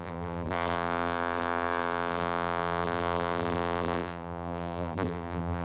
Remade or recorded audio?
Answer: remade